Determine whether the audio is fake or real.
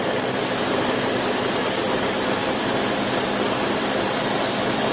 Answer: fake